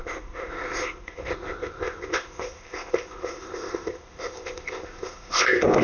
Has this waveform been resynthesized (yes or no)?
yes